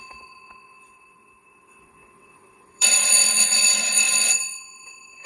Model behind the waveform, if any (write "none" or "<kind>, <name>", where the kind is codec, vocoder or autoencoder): vocoder, WaveNeXt